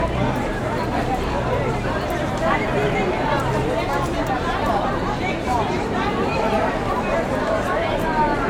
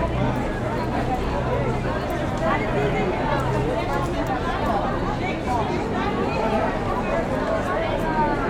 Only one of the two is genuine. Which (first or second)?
second